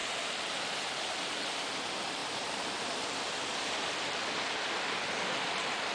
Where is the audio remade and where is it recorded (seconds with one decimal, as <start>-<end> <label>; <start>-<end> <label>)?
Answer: 0.0-5.9 recorded

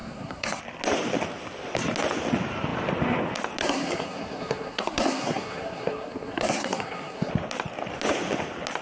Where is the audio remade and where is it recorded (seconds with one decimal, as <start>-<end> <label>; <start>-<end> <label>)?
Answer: 0.0-0.6 remade; 0.6-3.6 recorded; 3.6-7.3 remade; 7.3-8.8 recorded

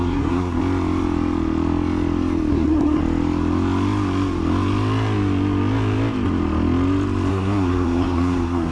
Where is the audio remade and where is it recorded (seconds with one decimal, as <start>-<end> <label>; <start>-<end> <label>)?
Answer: 0.0-0.6 remade; 0.6-2.5 recorded; 2.5-3.0 remade; 3.0-7.3 recorded; 7.3-8.7 remade

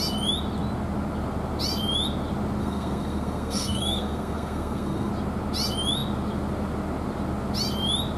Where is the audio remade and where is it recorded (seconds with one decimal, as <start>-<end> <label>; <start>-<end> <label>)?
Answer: 0.0-2.6 recorded; 2.6-5.1 remade; 5.1-8.2 recorded

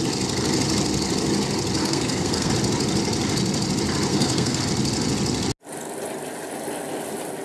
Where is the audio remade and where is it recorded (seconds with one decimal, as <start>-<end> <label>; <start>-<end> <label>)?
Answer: 0.0-1.8 recorded; 1.8-2.5 remade; 2.5-4.1 recorded; 4.1-4.6 remade; 4.6-7.4 recorded

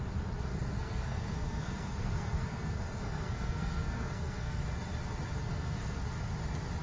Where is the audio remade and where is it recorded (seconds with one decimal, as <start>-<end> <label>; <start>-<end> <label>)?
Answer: 0.0-0.5 recorded; 0.5-4.6 remade; 4.6-5.4 recorded; 5.4-6.0 remade; 6.0-6.8 recorded